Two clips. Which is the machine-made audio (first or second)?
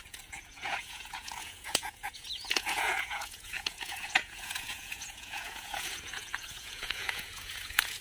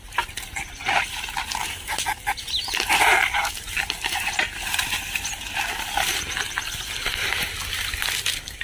first